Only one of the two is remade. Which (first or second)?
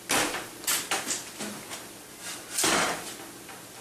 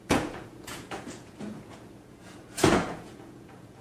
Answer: second